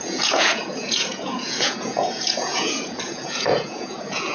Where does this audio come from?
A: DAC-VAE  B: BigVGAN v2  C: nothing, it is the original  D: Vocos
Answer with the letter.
D